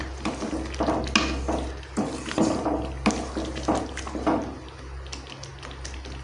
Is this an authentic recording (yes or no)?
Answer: yes